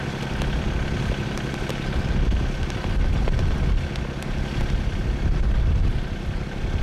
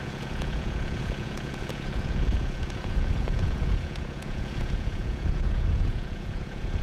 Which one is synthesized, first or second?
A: second